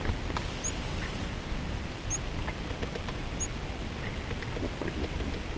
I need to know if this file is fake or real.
real